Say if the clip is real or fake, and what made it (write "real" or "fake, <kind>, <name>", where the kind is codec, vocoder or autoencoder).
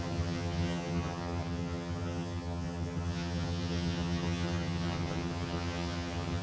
fake, vocoder, HiFi-GAN